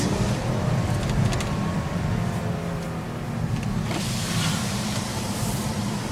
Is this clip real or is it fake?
real